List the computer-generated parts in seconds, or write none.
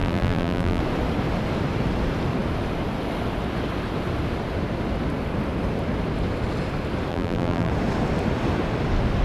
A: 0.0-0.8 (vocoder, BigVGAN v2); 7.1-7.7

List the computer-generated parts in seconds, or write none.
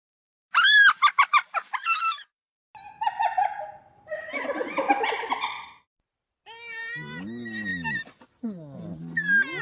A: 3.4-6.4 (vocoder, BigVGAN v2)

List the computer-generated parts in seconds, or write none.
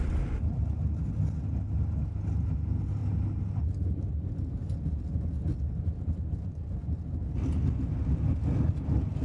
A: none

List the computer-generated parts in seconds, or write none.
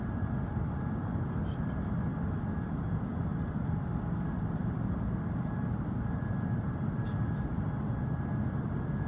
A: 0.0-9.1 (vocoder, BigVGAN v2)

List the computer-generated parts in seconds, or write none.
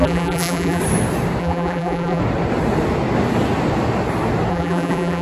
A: 0.0-0.8 (vocoder, BigVGAN v2); 1.4-2.2; 4.5-5.2